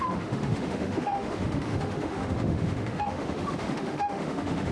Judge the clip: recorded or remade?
remade